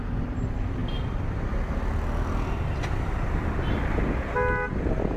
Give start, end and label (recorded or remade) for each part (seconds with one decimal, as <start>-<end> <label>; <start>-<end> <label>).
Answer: 0.0-5.2 recorded